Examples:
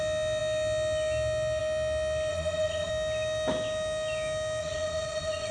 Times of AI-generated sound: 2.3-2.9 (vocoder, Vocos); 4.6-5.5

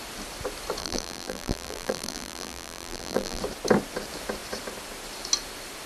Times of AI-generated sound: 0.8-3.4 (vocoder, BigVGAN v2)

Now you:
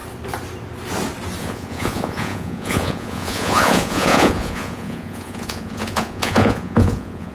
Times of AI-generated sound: 1.4-7.3 (vocoder, Vocos)